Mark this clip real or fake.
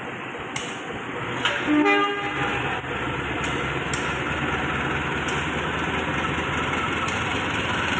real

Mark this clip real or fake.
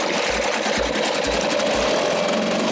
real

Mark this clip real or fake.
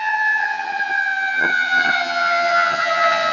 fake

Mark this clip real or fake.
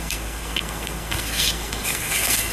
fake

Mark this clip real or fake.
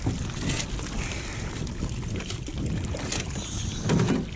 real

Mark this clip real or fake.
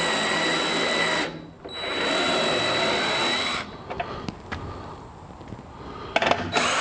real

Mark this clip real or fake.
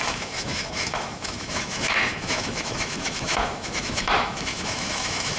fake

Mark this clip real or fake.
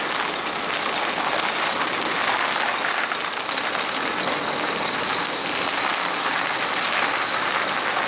real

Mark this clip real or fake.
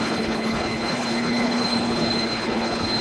fake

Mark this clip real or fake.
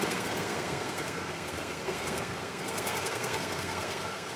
fake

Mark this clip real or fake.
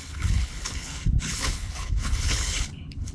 fake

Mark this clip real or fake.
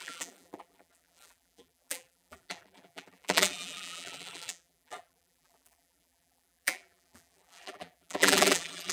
fake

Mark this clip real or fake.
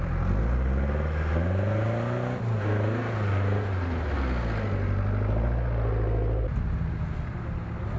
real